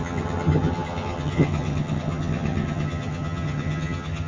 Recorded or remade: remade